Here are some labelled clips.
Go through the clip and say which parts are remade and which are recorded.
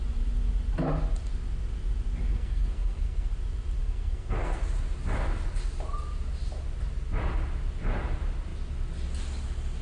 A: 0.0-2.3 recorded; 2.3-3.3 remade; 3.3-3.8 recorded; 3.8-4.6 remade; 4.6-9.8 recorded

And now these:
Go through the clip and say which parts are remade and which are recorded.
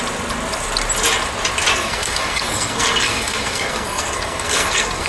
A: 0.0-1.7 recorded; 1.7-5.1 remade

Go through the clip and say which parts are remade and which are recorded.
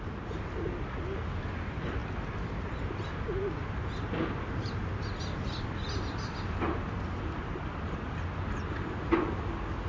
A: 0.0-9.9 recorded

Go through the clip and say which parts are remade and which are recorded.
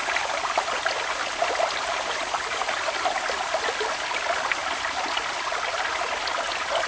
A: 0.0-6.9 recorded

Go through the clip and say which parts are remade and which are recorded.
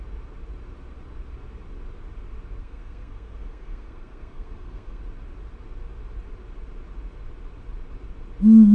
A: 0.0-2.6 recorded; 2.6-5.0 remade; 5.0-8.7 recorded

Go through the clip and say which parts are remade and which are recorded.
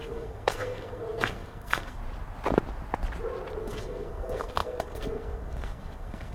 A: 0.0-2.0 remade; 2.0-3.6 recorded; 3.6-6.3 remade